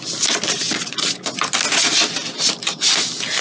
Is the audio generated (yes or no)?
no